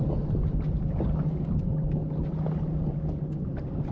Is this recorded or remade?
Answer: recorded